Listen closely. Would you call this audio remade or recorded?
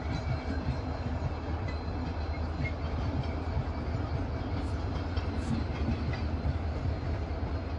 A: recorded